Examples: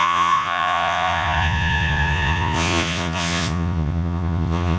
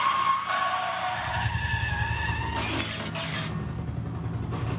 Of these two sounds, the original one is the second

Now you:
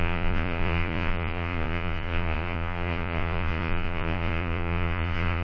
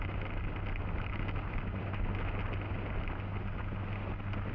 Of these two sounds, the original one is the second